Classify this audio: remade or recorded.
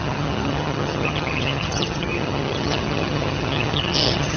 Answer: remade